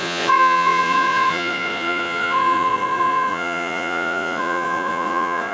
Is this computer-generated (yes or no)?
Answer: yes